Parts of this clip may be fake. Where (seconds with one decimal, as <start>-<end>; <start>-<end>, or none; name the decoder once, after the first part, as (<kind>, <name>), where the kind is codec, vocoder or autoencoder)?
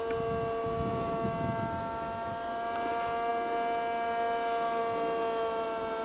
none